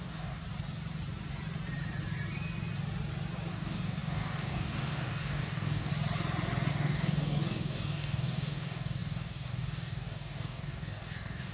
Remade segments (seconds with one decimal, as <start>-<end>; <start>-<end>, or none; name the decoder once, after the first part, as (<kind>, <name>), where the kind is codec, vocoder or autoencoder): 0.0-0.4 (codec, DAC); 3.5-5.9; 6.7-11.5